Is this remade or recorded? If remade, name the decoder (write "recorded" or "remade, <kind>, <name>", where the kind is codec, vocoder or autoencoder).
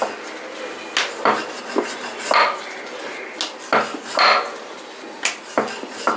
recorded